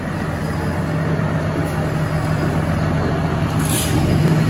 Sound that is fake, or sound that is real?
real